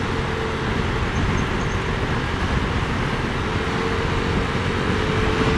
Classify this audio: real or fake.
real